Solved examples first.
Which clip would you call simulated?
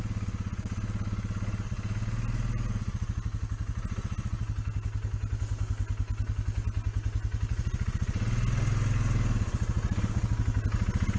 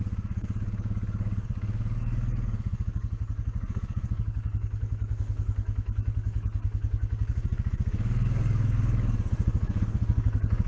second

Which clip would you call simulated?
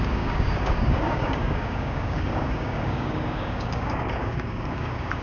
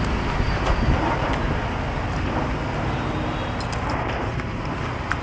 first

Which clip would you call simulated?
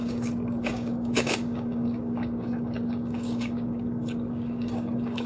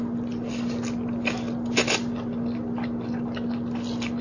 first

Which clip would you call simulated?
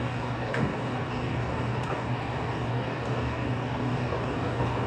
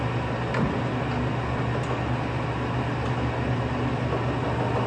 first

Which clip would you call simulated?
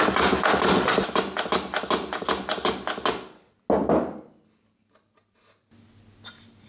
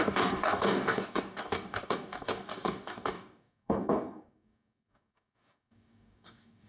second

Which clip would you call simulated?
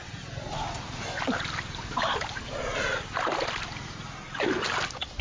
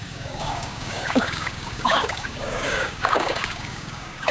second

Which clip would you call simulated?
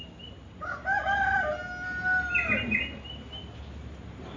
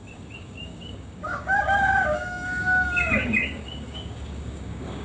second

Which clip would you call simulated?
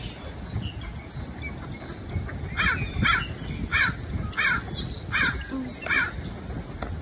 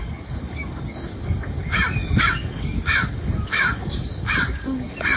second